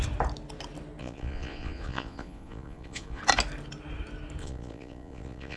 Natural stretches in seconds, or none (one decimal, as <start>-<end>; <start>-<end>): 0.0-1.0; 3.2-4.4